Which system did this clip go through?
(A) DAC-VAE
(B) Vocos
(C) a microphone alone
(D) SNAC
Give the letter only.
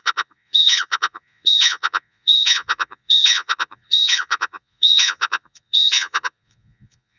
B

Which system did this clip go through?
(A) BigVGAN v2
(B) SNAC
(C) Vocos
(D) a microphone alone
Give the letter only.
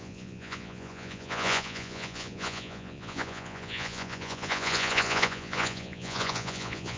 C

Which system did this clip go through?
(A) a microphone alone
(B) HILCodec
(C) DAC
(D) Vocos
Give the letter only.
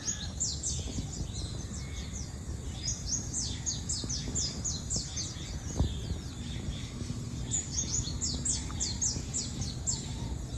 A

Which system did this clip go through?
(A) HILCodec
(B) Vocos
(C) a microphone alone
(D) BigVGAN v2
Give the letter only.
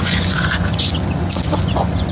B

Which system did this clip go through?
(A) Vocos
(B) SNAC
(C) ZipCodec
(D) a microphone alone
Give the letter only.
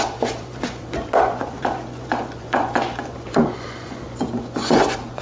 A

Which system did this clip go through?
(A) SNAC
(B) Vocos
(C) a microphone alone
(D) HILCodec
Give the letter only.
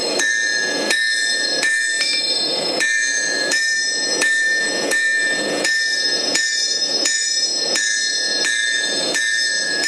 B